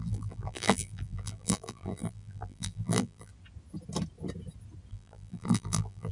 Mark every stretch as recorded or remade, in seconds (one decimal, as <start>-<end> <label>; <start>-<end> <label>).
0.0-3.3 remade; 3.3-4.9 recorded; 4.9-6.1 remade